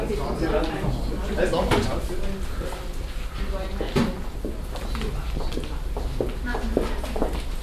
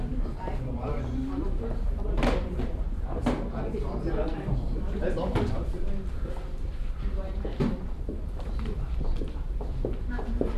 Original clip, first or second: first